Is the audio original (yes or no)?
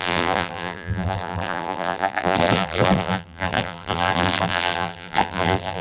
no